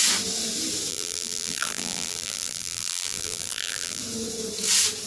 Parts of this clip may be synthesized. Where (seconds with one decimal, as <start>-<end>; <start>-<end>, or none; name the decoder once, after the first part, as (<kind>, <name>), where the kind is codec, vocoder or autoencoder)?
0.9-4.0 (vocoder, BigVGAN v2)